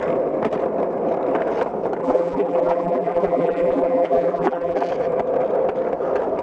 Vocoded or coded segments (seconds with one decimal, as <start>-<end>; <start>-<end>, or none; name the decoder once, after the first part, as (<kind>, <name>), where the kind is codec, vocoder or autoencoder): 2.0-4.9 (vocoder, BigVGAN v2)